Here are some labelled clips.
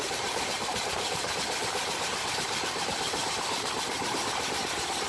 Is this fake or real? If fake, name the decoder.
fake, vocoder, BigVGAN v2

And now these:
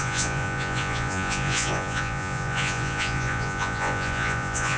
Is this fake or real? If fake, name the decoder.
fake, vocoder, Vocos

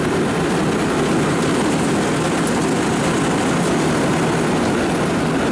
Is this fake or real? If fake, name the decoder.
real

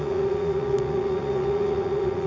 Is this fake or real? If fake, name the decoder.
fake, vocoder, Vocos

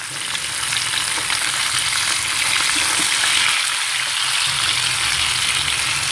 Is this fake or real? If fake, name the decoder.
real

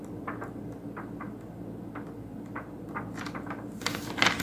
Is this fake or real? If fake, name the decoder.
real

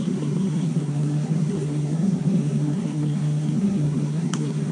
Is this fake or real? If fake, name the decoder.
fake, codec, SNAC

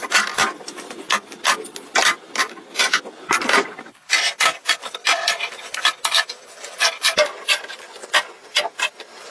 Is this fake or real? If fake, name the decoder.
real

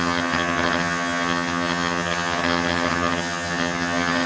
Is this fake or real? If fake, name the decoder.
fake, vocoder, HiFi-GAN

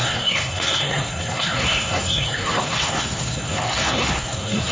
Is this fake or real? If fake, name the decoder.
fake, codec, SNAC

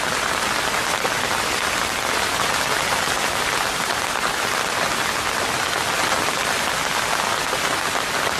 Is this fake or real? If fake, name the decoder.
real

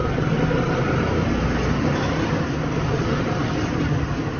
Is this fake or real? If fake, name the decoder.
real